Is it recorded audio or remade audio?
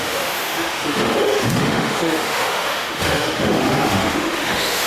remade